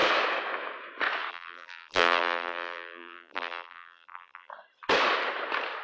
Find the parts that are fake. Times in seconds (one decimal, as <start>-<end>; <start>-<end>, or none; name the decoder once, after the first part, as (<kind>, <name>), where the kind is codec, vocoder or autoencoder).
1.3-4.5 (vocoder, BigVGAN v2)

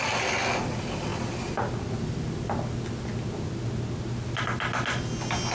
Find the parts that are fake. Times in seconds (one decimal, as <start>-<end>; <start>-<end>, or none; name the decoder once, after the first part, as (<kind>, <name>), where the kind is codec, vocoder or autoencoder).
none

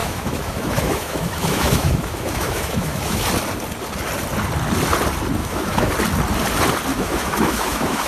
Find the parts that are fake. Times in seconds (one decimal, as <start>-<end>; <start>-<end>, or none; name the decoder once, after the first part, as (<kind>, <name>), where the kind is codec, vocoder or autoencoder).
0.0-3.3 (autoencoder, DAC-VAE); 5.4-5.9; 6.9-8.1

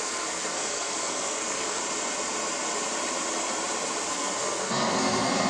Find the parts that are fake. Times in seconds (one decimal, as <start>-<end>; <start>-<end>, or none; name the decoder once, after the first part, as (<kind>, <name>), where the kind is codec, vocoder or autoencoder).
0.0-1.8 (codec, SNAC); 4.1-5.5